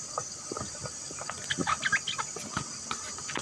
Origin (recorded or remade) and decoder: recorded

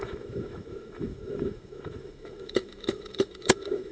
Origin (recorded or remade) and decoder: remade, autoencoder, DAC-VAE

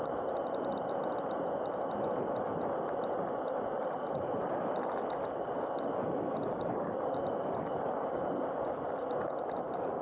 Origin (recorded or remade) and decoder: recorded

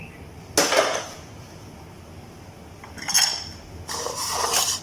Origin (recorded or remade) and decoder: recorded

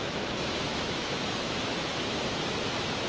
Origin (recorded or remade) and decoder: remade, autoencoder, DAC-VAE